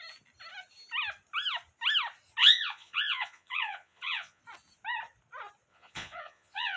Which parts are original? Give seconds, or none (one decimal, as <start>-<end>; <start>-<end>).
0.0-2.4; 4.4-5.7